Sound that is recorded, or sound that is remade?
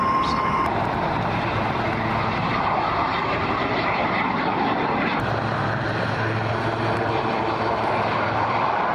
remade